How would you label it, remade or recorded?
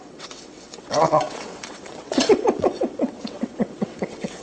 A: remade